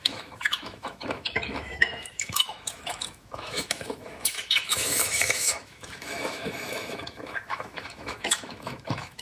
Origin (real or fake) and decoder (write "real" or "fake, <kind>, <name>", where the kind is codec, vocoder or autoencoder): fake, autoencoder, DAC-VAE